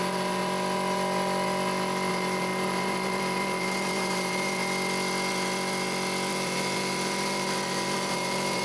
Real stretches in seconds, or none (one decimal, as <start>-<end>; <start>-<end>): 0.4-2.1; 4.6-6.3